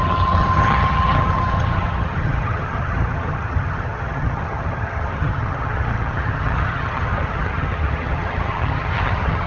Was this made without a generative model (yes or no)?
no